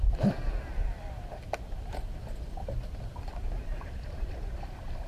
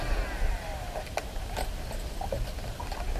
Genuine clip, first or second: second